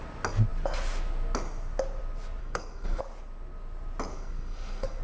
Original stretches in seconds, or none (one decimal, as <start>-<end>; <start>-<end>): 0.0-2.4; 3.0-4.1